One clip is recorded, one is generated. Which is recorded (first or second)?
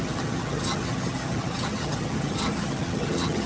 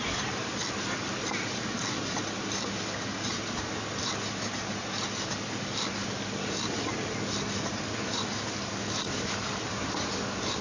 second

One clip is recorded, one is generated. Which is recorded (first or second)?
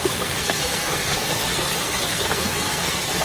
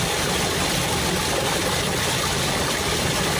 second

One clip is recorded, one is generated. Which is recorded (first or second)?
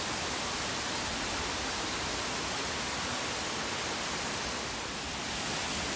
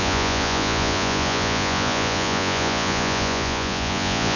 first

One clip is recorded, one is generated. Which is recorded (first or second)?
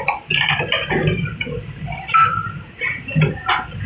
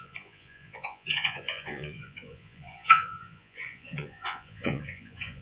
first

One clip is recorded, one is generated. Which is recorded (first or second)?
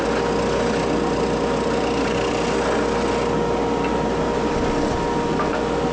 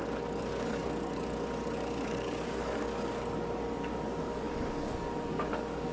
first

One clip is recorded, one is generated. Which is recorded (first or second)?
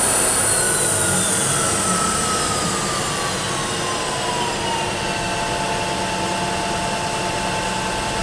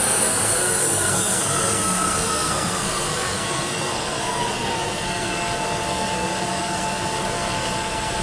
first